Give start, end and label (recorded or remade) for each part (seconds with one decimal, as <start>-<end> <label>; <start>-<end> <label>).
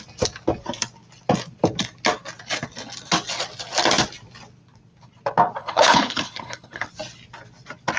0.0-5.6 recorded; 5.6-6.9 remade; 6.9-8.0 recorded